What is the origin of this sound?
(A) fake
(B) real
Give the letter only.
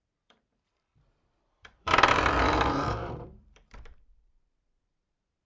A